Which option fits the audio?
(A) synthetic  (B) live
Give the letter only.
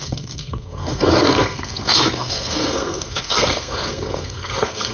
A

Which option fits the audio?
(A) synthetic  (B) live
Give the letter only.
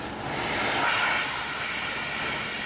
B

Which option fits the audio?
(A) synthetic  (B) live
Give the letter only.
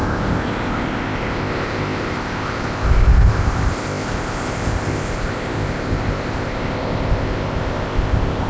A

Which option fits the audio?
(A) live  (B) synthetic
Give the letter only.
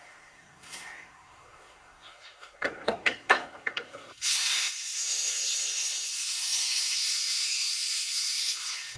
B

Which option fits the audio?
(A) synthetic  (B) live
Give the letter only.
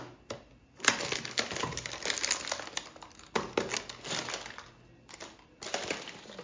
B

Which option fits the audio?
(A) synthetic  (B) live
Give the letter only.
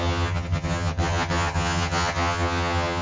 A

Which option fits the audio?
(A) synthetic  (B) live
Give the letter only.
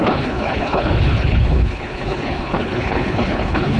A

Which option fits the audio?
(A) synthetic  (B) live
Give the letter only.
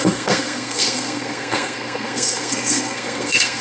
A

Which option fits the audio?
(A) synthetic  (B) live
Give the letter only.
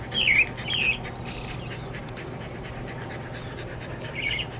B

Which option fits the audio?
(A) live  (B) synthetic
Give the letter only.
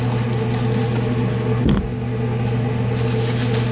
A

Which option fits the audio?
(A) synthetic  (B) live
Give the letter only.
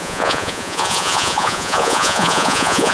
A